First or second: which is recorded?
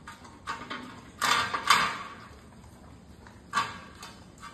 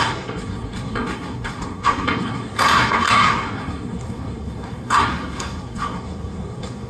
first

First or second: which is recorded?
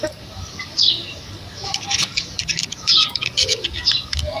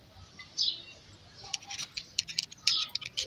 second